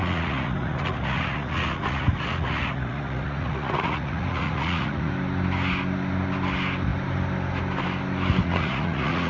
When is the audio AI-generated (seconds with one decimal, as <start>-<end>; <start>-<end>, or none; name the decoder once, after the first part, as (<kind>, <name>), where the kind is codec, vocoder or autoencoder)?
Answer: 0.0-5.1 (vocoder, Vocos); 8.4-9.3